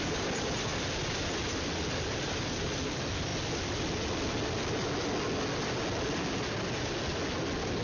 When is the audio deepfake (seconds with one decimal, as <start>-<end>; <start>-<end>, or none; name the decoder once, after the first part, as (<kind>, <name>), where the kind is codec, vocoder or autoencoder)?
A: none